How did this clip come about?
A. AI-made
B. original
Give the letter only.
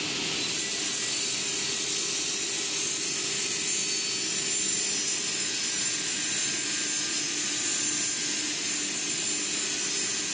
B